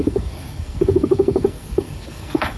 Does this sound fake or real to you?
fake